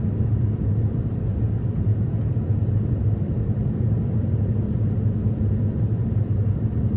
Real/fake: fake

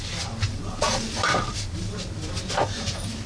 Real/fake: real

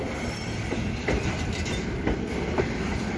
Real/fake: fake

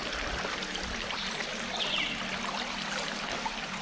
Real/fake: real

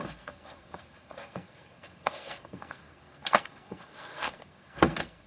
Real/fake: fake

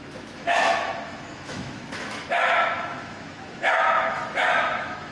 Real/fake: fake